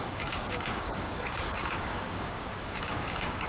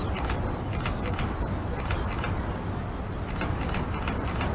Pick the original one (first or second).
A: second